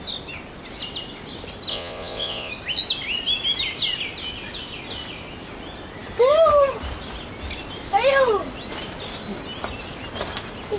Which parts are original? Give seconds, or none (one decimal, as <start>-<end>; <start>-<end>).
0.0-1.7; 2.5-10.8